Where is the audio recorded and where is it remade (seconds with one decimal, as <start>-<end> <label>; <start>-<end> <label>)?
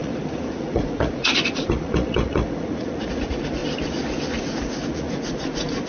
0.0-3.6 remade; 3.6-4.4 recorded; 4.4-5.9 remade